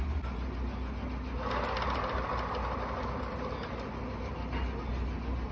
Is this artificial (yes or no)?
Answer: no